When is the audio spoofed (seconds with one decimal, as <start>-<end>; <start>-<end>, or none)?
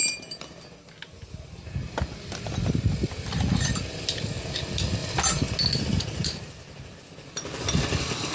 none